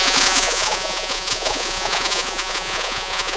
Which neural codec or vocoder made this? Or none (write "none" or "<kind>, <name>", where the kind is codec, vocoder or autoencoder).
vocoder, Vocos